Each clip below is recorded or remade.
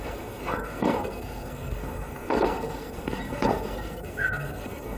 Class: remade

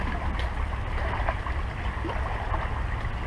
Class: recorded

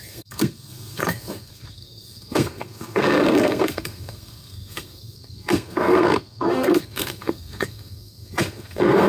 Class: remade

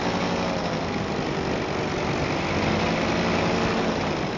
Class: recorded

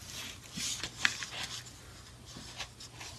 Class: recorded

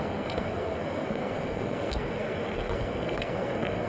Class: remade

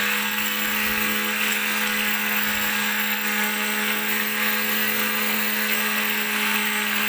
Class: remade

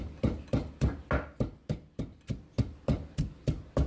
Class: recorded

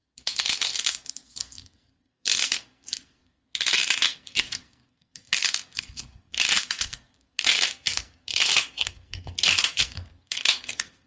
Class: remade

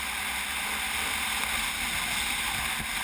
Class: recorded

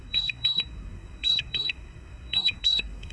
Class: remade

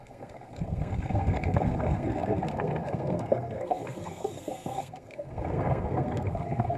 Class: remade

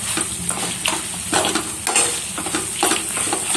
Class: recorded